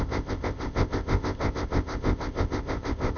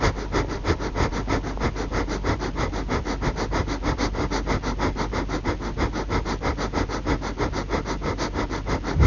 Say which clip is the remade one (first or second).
first